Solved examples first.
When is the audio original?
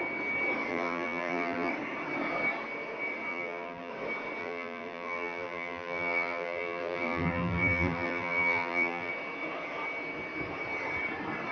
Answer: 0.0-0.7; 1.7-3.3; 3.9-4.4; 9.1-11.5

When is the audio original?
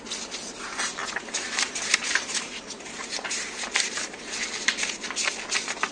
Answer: 0.0-1.0; 4.5-5.9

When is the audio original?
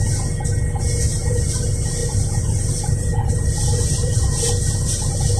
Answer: 0.0-1.1; 1.6-2.0; 4.5-5.4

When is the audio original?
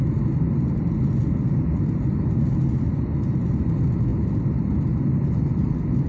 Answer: 1.2-3.4; 4.1-5.0